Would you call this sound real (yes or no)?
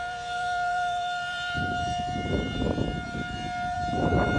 no